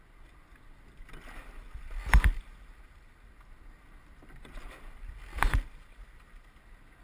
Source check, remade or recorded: recorded